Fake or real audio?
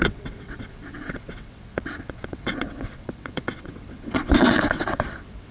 fake